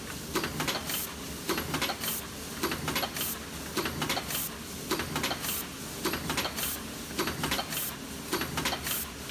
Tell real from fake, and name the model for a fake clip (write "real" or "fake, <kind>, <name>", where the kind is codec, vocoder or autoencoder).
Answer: real